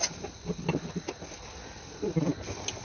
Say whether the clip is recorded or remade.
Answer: recorded